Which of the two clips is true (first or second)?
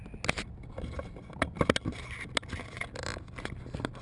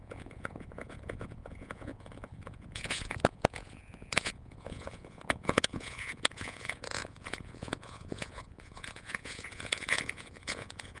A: first